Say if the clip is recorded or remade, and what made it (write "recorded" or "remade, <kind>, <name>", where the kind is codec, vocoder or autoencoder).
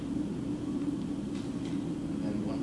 recorded